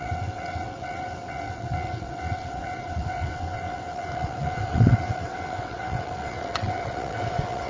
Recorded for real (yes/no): no